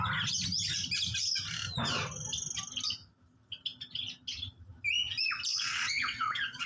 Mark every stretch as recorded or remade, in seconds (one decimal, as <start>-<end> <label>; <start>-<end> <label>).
0.0-5.5 recorded; 5.5-6.7 remade

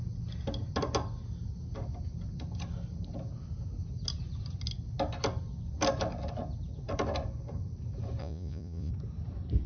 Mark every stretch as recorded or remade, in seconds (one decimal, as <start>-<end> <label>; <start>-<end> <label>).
0.0-8.2 recorded; 8.2-8.9 remade; 8.9-9.7 recorded

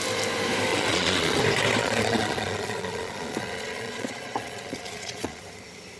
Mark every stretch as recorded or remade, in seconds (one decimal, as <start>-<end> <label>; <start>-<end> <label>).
0.0-0.7 recorded; 0.7-1.4 remade; 1.4-1.8 recorded; 1.8-5.4 remade; 5.4-6.0 recorded

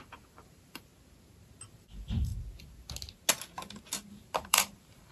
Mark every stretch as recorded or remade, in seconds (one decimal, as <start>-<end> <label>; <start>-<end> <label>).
0.0-0.9 remade; 0.9-1.7 recorded; 1.7-2.3 remade; 2.3-4.1 recorded; 4.1-5.1 remade

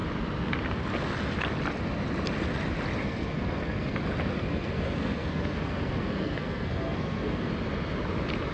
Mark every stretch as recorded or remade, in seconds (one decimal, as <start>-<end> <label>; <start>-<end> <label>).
0.0-3.0 recorded; 3.0-4.0 remade; 4.0-4.4 recorded; 4.4-7.5 remade; 7.5-8.5 recorded

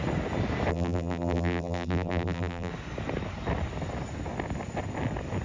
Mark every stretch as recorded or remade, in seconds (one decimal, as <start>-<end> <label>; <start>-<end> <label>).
0.0-0.7 recorded; 0.7-2.7 remade; 2.7-5.4 recorded

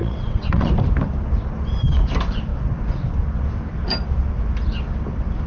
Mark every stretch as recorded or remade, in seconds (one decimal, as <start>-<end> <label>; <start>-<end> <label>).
0.0-0.7 remade; 0.7-5.5 recorded